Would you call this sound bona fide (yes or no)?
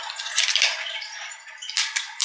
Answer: no